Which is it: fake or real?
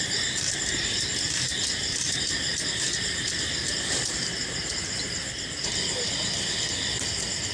real